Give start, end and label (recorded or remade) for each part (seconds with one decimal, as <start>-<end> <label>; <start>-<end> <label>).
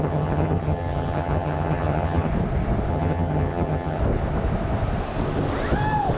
0.0-2.3 remade; 2.3-2.9 recorded; 2.9-4.0 remade; 4.0-6.2 recorded